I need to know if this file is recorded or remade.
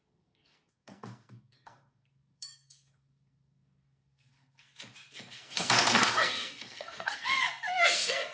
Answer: remade